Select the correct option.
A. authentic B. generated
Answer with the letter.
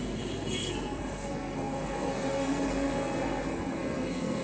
B